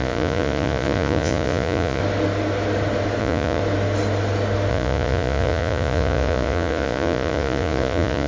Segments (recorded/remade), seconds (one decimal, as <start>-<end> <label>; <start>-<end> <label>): 0.0-2.0 remade; 2.0-3.2 recorded; 3.2-3.6 remade; 3.6-4.7 recorded; 4.7-8.3 remade